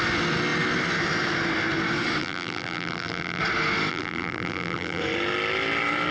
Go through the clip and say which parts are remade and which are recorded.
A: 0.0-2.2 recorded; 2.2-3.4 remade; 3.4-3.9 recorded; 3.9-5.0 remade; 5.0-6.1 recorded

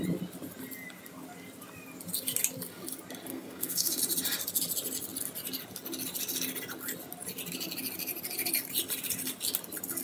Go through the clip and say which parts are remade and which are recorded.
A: 0.0-3.3 recorded; 3.3-4.0 remade; 4.0-10.0 recorded

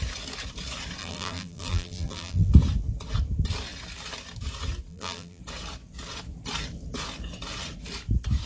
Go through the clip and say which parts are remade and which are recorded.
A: 0.0-1.0 recorded; 1.0-2.5 remade; 2.5-4.9 recorded; 4.9-5.4 remade; 5.4-8.5 recorded

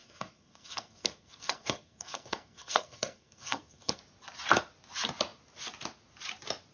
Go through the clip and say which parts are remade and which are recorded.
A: 0.0-4.0 remade; 4.0-6.7 recorded

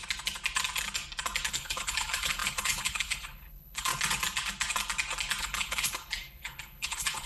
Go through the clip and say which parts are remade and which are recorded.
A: 0.0-1.5 recorded; 1.5-3.9 remade; 3.9-5.4 recorded; 5.4-7.3 remade

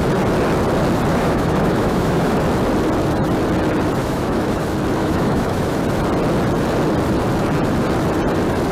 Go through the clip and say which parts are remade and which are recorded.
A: 0.0-1.1 recorded; 1.1-2.4 remade; 2.4-4.0 recorded; 4.0-4.6 remade; 4.6-5.0 recorded; 5.0-5.8 remade; 5.8-8.7 recorded